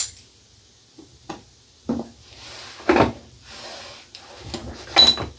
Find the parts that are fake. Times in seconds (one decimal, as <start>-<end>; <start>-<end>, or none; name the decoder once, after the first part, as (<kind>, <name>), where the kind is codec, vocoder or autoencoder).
none